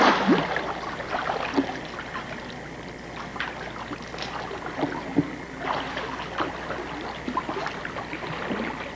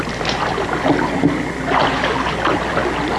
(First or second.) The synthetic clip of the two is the second